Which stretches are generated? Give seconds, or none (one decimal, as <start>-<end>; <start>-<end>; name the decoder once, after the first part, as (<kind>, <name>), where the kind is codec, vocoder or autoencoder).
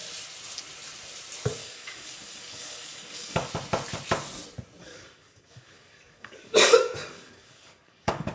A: 1.6-3.5 (codec, DAC); 4.8-8.3